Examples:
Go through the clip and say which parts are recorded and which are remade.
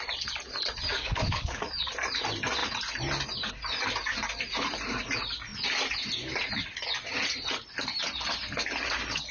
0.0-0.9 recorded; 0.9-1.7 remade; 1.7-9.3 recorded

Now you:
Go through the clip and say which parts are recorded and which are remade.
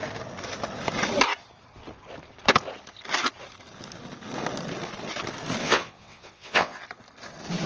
0.0-5.6 recorded; 5.6-6.8 remade; 6.8-7.7 recorded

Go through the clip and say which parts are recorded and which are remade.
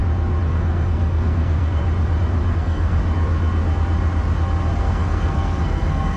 0.0-0.5 recorded; 0.5-1.8 remade; 1.8-2.5 recorded; 2.5-3.0 remade; 3.0-4.8 recorded; 4.8-6.2 remade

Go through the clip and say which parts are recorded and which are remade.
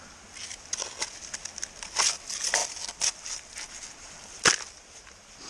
0.0-5.5 recorded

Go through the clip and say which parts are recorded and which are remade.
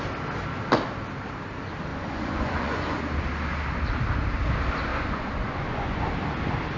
0.0-1.9 recorded; 1.9-3.0 remade; 3.0-4.9 recorded; 4.9-6.1 remade; 6.1-6.8 recorded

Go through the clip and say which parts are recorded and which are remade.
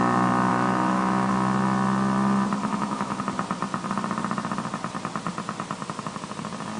0.0-0.5 recorded; 0.5-1.3 remade; 1.3-2.6 recorded; 2.6-3.2 remade; 3.2-6.8 recorded